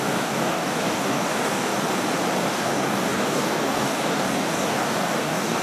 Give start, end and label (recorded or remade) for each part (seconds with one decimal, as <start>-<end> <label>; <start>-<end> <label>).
0.0-1.7 remade; 1.7-2.5 recorded; 2.5-5.6 remade